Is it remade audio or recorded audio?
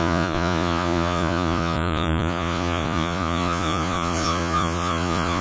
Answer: remade